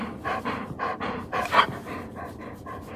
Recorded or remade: remade